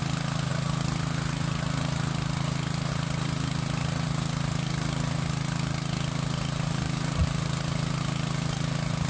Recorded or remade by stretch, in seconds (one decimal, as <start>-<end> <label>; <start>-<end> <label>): 0.0-9.1 recorded